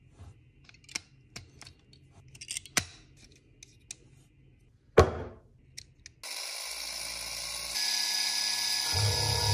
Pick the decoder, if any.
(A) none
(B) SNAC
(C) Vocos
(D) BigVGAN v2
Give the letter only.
A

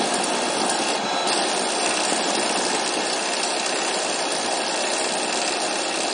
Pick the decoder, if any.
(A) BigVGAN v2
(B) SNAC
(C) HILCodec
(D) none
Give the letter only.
D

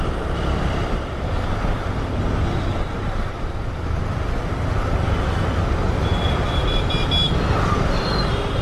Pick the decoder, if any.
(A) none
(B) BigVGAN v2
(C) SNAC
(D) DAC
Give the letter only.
A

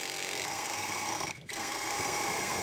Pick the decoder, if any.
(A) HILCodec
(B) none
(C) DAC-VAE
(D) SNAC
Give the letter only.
D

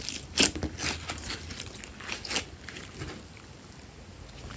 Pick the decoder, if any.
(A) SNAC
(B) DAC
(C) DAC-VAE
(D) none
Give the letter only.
D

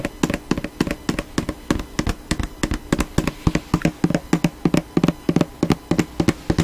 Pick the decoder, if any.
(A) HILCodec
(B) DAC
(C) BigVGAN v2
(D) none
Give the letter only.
D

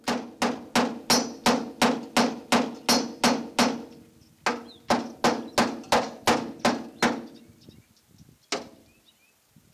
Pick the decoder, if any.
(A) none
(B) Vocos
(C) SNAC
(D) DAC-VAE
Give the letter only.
A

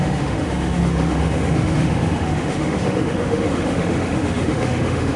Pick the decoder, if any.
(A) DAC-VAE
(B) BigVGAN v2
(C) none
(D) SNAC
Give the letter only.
A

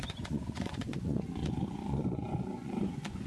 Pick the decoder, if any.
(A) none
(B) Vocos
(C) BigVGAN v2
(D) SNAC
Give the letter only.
B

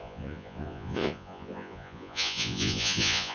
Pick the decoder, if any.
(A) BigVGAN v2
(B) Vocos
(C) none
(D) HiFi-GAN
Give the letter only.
B